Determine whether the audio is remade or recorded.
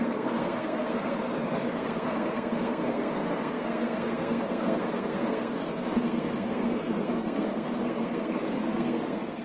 remade